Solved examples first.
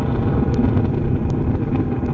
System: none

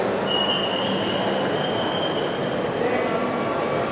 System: none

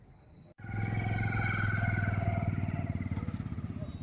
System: none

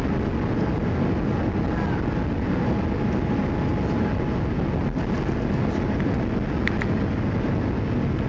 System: none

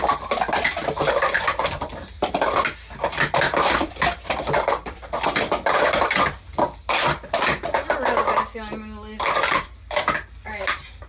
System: none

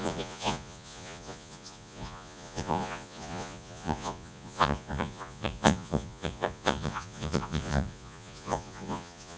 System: vocoder, Vocos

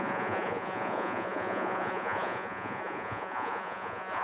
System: vocoder, Vocos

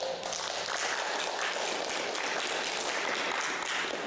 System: none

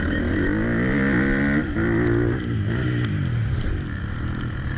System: none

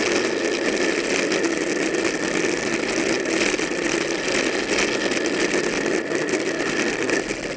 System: none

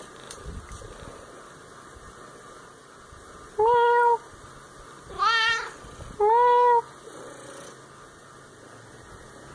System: none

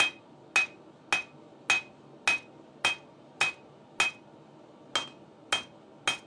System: none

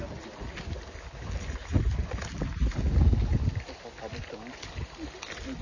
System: none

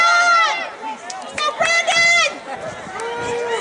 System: none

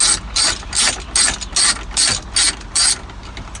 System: none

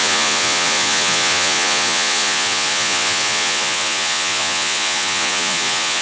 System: vocoder, Vocos